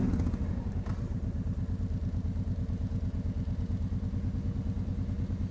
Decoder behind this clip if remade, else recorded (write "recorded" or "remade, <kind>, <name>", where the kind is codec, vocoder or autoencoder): recorded